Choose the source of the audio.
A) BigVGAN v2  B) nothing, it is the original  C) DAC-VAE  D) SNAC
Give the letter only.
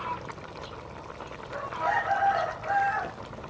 B